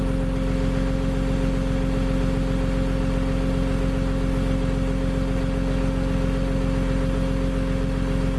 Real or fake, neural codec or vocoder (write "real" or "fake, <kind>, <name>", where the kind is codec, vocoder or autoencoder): real